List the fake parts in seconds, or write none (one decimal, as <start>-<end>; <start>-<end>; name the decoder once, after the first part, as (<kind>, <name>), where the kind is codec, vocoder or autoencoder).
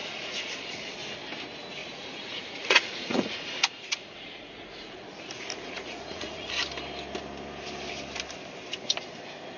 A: 0.0-0.5 (vocoder, Vocos); 1.8-6.5